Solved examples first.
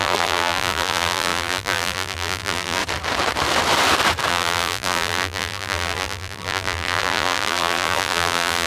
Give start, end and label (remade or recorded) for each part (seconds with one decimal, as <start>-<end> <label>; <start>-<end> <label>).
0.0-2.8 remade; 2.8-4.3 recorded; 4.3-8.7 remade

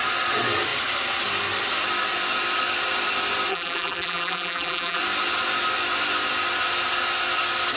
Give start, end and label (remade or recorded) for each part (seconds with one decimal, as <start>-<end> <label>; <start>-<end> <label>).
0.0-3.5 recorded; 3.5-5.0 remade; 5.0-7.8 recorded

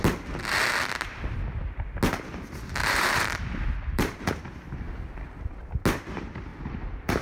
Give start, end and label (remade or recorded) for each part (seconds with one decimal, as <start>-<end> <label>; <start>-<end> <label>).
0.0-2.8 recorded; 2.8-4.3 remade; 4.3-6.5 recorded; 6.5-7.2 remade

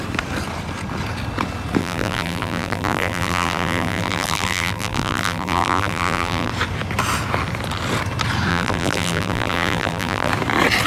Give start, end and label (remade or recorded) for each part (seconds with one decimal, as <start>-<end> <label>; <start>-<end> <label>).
0.0-1.8 recorded; 1.8-6.5 remade; 6.5-8.5 recorded; 8.5-10.3 remade; 10.3-10.9 recorded